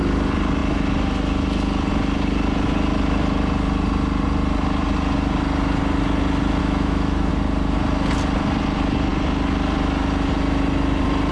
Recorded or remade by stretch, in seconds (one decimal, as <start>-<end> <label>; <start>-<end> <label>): 0.0-6.6 recorded; 6.6-7.3 remade; 7.3-11.3 recorded